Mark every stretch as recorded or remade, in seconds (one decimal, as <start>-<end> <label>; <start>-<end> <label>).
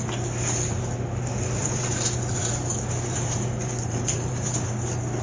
0.0-1.6 recorded; 1.6-4.7 remade; 4.7-5.2 recorded